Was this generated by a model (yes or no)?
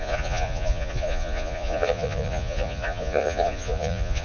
yes